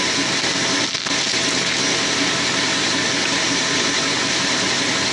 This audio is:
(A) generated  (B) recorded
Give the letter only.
B